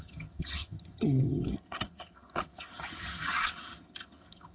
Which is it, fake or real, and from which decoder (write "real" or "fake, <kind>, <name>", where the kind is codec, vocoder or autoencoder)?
fake, vocoder, HiFi-GAN